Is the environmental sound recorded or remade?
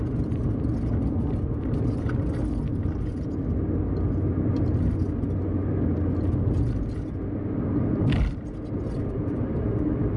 recorded